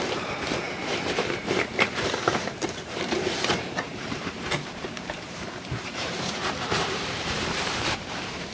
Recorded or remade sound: remade